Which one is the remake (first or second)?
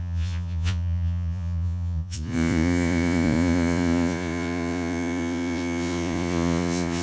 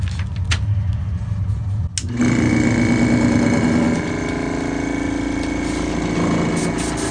first